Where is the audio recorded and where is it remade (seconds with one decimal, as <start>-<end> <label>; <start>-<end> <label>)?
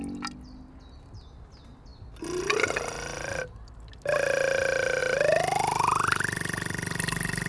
0.0-7.5 recorded